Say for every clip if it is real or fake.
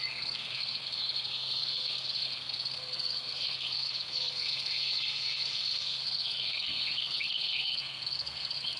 fake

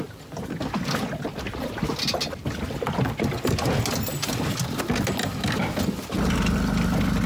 real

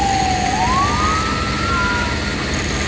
real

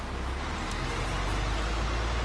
real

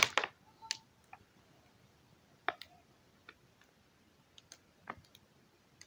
real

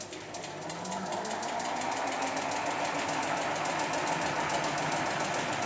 real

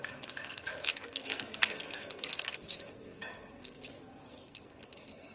fake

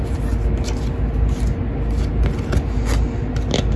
real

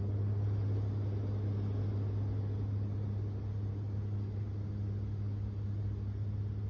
real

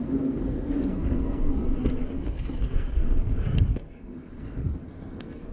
fake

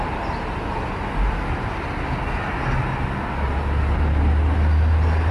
real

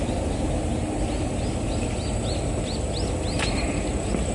real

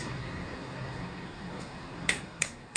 fake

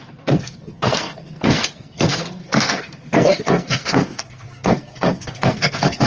fake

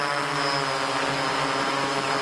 real